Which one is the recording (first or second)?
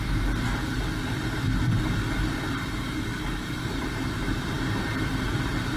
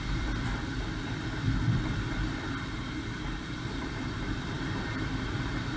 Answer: first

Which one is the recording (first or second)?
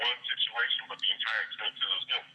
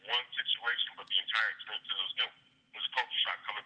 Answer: second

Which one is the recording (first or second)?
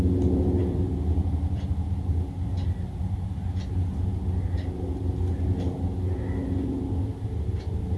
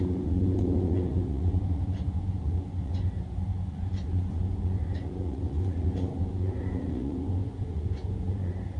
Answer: first